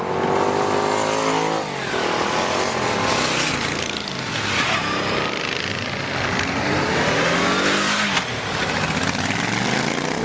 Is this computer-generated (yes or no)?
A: no